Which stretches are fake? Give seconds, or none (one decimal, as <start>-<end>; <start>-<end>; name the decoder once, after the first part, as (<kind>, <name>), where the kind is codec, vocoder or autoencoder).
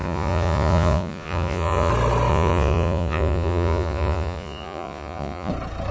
0.0-1.9 (vocoder, Vocos); 2.3-5.5